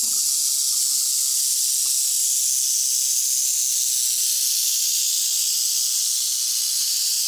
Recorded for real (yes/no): yes